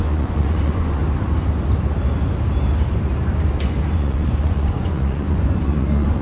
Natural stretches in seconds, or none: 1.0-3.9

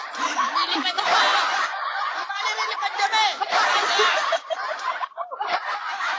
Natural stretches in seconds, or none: 0.0-1.3; 2.4-6.2